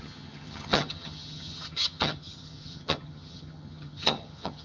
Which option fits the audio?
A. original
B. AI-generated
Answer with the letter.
B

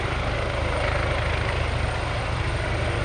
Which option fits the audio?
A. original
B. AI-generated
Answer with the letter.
A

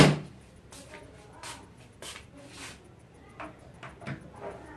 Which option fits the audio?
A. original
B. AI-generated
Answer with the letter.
A